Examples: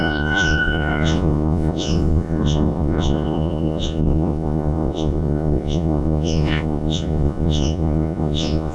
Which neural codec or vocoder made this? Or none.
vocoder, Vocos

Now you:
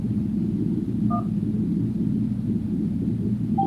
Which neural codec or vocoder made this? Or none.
none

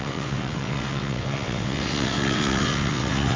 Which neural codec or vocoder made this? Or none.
vocoder, WaveNeXt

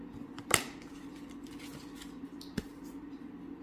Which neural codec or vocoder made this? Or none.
none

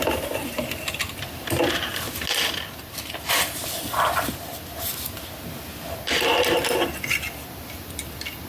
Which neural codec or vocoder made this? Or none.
none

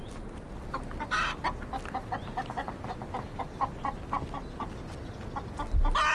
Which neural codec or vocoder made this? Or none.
none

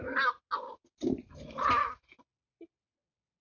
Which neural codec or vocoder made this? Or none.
none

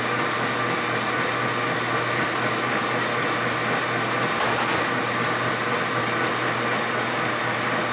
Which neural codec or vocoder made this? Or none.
none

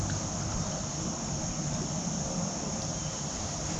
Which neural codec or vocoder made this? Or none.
none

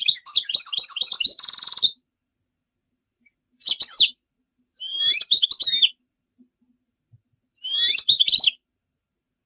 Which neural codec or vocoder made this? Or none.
none